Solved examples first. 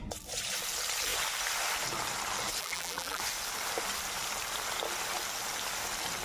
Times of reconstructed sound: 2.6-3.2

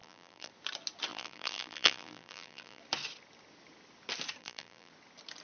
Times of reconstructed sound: 0.0-0.5; 1.1-2.8; 4.4-4.9

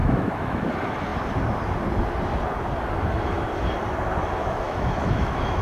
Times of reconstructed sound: 0.0-0.7; 4.4-5.6

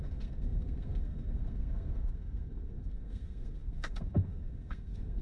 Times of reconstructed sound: 0.0-5.2

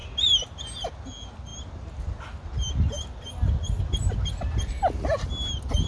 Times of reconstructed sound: none